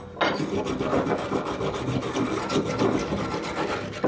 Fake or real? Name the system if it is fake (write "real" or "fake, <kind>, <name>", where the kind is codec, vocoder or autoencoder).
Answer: real